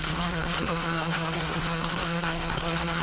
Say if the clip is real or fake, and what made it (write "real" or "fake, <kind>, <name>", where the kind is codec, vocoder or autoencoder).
fake, codec, SNAC